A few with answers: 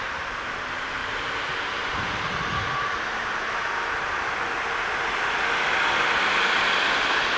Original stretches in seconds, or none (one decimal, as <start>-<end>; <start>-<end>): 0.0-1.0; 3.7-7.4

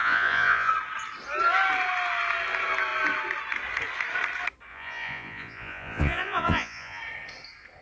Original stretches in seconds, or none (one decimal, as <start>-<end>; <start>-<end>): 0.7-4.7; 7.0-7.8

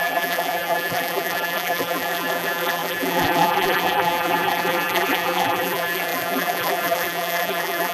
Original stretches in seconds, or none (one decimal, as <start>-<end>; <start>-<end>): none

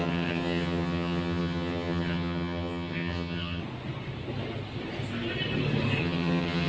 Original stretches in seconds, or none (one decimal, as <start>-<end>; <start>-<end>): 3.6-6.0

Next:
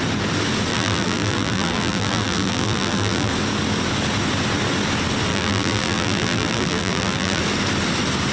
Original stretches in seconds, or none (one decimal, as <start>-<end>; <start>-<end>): 0.0-0.7; 3.3-5.3; 7.4-8.3

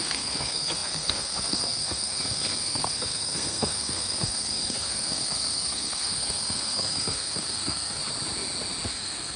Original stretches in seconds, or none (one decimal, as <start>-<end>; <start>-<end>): 8.0-8.9